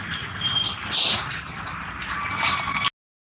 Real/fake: real